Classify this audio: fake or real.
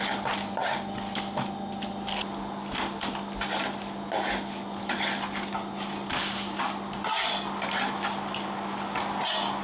real